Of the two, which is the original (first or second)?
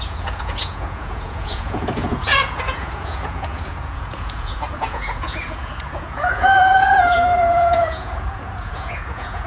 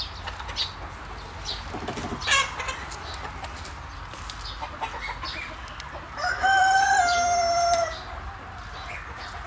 second